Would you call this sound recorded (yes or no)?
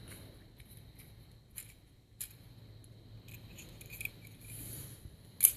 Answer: yes